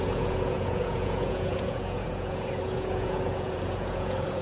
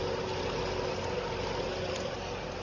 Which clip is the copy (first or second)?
first